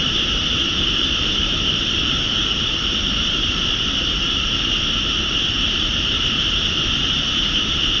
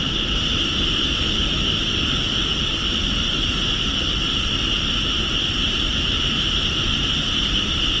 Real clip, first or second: second